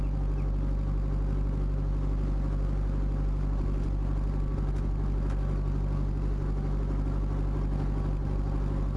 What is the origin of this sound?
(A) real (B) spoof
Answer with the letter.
A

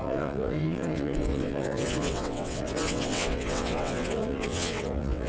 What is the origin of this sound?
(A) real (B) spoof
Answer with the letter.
B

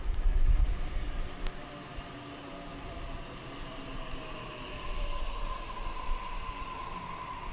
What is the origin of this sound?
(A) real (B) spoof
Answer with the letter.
B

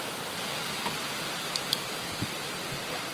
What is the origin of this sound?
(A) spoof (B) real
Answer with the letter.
B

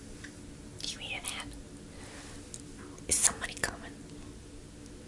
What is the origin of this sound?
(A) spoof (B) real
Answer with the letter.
B